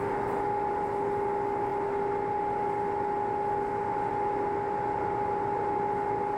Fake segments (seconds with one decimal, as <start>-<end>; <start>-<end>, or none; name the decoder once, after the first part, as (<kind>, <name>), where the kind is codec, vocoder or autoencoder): none